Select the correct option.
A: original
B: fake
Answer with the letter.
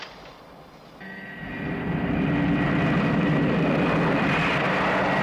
A